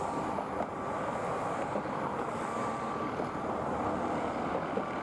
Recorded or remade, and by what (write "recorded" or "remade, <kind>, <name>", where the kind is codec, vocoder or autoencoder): recorded